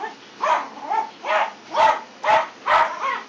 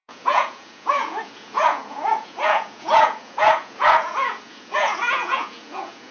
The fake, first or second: second